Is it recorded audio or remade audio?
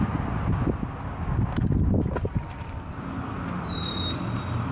recorded